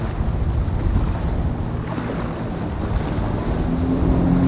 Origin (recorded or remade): recorded